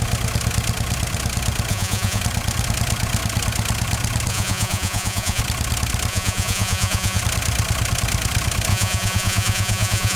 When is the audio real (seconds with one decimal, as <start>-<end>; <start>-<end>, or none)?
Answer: 0.0-1.7; 2.2-4.3; 5.4-6.1; 7.2-8.7